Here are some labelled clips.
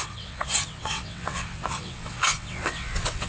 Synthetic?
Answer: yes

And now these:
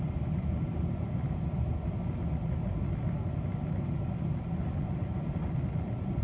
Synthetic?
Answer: no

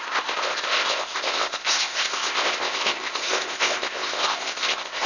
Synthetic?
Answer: yes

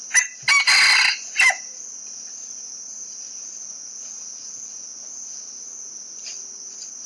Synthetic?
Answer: no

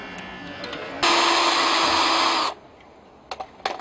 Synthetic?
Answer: no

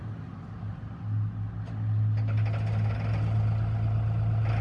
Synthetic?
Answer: no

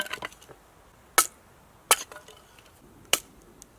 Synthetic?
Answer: no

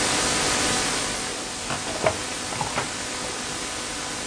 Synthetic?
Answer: no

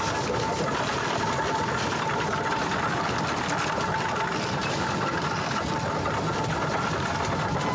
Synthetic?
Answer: no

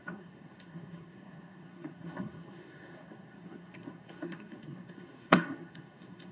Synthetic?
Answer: yes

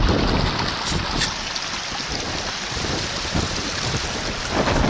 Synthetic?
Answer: no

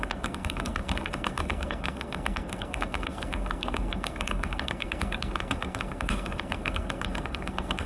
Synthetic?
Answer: yes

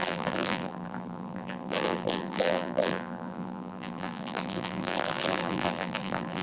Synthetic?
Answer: yes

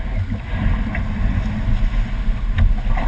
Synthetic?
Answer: no